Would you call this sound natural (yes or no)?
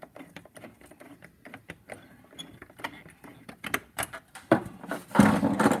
yes